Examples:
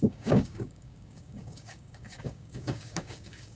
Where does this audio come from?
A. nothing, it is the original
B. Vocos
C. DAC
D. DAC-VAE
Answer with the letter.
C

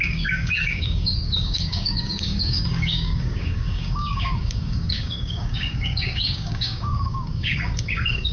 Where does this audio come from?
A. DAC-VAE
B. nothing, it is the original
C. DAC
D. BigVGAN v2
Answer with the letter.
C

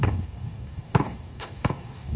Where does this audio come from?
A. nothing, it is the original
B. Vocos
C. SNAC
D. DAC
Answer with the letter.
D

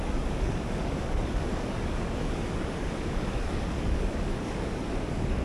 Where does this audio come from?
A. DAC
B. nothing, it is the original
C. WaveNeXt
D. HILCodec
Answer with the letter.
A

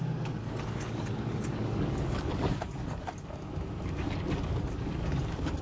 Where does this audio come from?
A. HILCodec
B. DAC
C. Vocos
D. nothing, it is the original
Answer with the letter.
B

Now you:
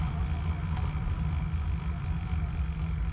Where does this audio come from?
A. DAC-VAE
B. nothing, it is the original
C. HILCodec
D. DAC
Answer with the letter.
B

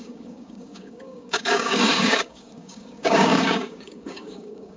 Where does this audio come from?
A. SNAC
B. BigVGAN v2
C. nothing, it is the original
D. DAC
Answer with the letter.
D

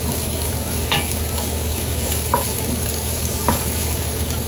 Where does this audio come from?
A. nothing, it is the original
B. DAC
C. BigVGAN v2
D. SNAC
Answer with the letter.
B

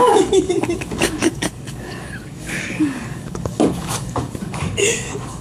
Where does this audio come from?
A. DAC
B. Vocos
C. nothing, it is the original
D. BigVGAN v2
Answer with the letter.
A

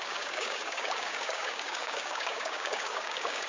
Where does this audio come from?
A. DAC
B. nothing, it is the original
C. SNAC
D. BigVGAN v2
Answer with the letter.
A